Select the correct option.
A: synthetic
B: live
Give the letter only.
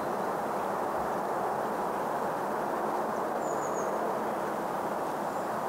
B